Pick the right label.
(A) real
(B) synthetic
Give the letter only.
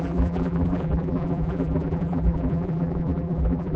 B